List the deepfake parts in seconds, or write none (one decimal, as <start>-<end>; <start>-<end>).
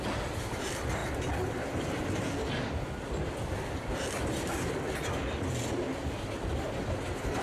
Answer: none